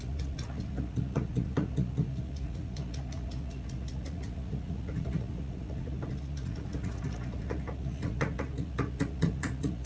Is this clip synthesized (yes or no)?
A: yes